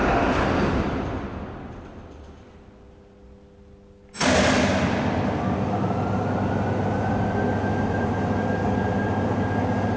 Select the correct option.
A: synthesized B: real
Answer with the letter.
B